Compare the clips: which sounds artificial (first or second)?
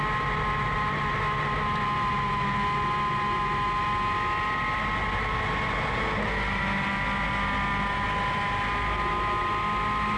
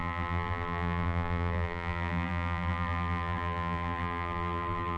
second